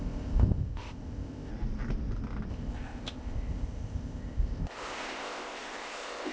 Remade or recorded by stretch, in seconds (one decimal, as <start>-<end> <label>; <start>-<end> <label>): 0.0-1.5 remade; 1.5-2.5 recorded; 2.5-6.3 remade